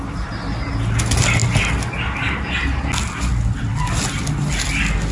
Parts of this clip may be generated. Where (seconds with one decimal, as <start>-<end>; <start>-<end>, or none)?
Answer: none